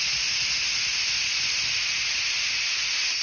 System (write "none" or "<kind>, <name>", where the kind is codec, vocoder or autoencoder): none